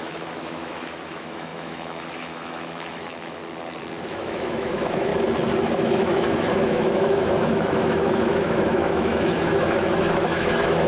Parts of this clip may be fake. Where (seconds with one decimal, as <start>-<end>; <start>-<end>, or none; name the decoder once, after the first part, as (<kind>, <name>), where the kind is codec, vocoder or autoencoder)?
0.0-3.4 (autoencoder, DAC-VAE); 4.0-5.1; 5.8-10.9